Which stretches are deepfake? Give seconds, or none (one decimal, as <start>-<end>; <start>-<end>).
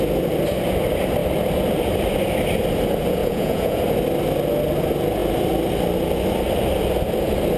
3.2-3.8